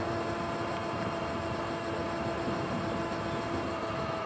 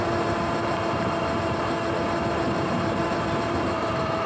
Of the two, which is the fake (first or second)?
second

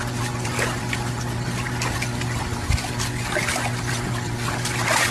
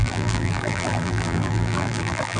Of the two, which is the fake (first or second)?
second